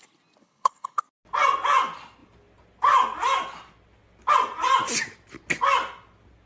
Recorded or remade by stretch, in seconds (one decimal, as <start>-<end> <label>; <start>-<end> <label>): 0.0-0.4 recorded; 0.4-1.0 remade; 1.0-6.5 recorded